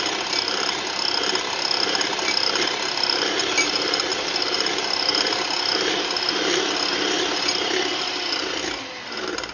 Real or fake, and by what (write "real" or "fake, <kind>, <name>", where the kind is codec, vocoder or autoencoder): real